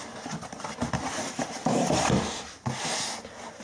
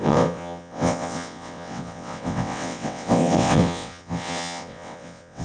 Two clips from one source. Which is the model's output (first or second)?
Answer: second